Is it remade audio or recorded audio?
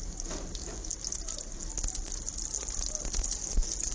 recorded